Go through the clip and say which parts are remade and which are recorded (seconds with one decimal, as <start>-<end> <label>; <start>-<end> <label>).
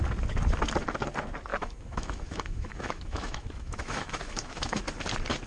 0.0-1.5 recorded; 1.5-4.8 remade; 4.8-5.5 recorded